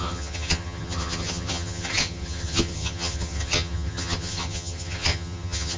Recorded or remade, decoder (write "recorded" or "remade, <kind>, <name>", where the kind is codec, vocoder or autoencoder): remade, vocoder, HiFi-GAN